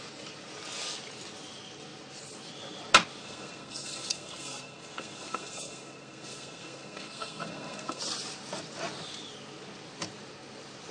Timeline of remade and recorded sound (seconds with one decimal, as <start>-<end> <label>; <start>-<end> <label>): 0.0-3.2 recorded; 3.2-8.0 remade; 8.0-10.9 recorded